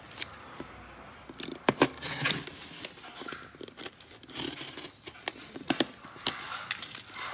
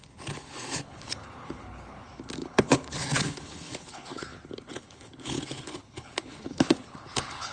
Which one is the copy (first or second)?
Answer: second